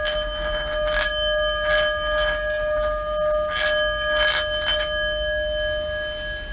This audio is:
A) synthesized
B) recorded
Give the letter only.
B